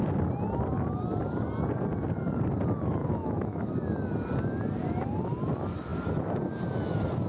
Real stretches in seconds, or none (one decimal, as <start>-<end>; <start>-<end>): 0.0-3.0; 3.7-7.3